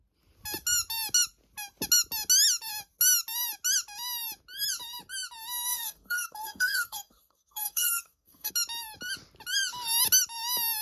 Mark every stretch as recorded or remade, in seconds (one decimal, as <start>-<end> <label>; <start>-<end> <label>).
0.0-5.7 recorded; 5.7-8.5 remade; 8.5-10.8 recorded